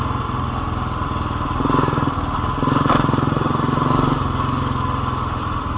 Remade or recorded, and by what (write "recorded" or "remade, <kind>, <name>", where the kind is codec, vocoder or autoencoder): recorded